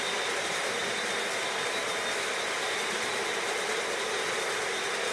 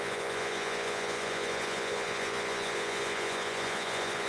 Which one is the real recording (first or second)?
first